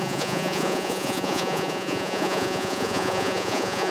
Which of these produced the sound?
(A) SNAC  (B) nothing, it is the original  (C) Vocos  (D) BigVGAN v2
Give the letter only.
C